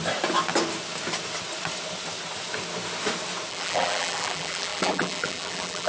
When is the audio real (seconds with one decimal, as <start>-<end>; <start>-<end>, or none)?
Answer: 0.0-3.5